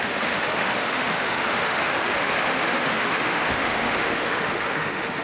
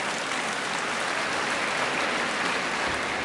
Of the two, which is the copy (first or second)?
first